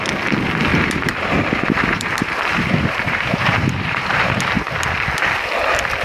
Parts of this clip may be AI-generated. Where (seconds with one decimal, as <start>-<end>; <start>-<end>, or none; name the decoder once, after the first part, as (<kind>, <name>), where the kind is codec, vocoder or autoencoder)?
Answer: 0.7-4.3 (vocoder, BigVGAN v2)